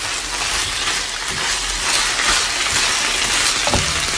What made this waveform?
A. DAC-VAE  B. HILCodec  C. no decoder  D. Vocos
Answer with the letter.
C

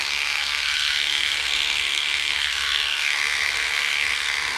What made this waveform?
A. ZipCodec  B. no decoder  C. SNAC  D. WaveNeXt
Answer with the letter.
C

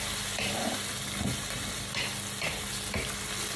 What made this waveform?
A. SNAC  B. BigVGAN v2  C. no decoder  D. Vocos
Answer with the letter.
C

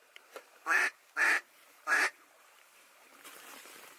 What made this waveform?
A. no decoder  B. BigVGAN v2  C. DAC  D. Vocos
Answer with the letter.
B